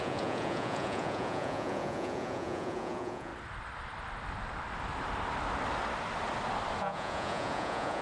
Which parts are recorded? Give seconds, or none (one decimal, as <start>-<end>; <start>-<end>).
3.3-6.8